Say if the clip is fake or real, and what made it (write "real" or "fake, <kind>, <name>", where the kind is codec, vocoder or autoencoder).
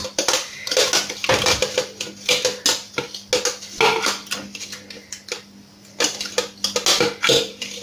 real